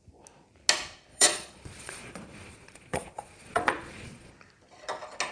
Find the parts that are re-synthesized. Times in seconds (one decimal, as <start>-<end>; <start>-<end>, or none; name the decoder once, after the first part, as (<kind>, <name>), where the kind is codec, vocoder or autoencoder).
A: 1.1-4.3 (vocoder, Vocos)